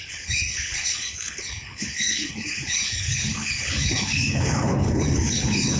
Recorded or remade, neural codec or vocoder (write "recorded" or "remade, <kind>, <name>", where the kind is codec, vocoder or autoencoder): remade, codec, HILCodec